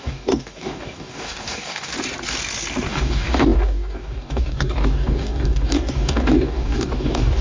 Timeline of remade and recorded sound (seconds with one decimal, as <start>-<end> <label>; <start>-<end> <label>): 0.0-1.9 remade; 1.9-2.9 recorded; 2.9-7.4 remade